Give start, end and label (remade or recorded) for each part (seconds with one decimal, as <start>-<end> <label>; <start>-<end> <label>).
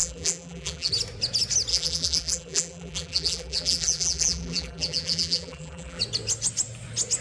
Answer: 0.0-0.9 remade; 0.9-1.7 recorded; 1.7-6.0 remade; 6.0-7.2 recorded